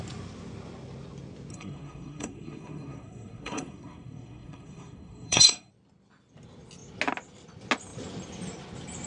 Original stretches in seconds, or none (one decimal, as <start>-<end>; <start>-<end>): 0.0-1.5; 5.7-9.1